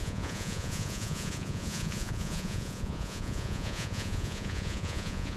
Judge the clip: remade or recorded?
remade